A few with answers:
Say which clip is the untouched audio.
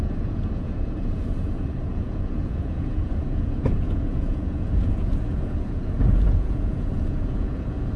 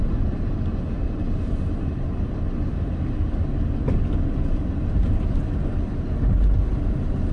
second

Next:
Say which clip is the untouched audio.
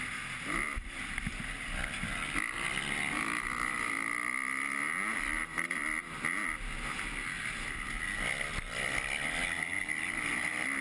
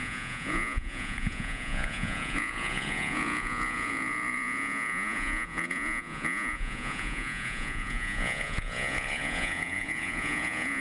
first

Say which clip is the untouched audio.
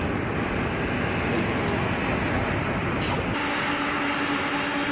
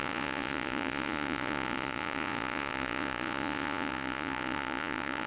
first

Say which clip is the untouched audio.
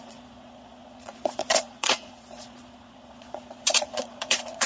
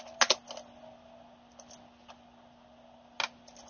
second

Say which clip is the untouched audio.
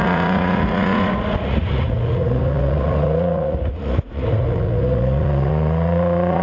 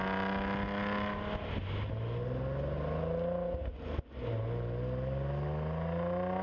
second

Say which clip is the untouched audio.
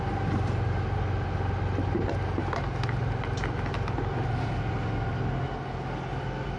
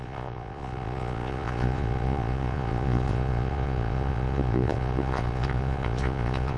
first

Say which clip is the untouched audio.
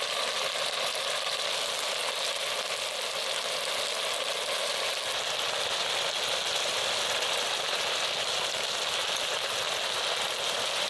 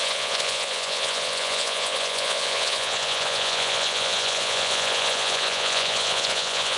first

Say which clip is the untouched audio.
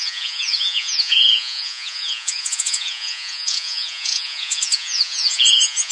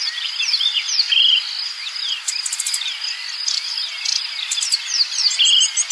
second